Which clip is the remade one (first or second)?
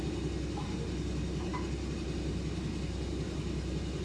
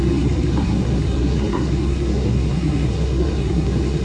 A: second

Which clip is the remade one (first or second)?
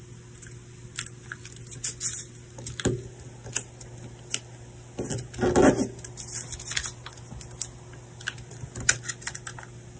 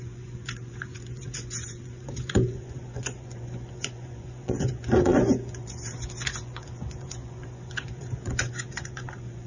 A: second